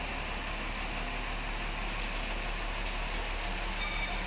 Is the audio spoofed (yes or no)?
no